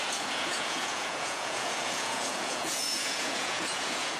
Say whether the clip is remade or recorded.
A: remade